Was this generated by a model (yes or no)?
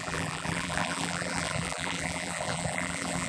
yes